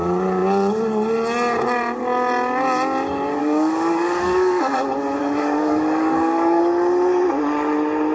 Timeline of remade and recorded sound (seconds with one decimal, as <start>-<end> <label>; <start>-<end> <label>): 0.0-3.4 recorded; 3.4-4.8 remade; 4.8-5.2 recorded; 5.2-6.6 remade; 6.6-8.1 recorded